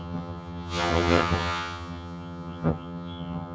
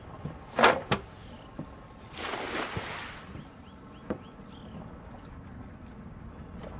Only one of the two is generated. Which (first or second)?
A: first